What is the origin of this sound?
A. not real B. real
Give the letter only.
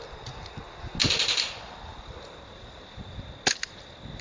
B